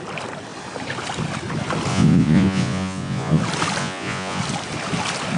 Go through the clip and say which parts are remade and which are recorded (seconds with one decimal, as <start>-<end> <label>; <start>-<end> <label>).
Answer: 0.0-1.9 recorded; 1.9-3.4 remade; 3.4-3.8 recorded; 3.8-4.4 remade; 4.4-5.4 recorded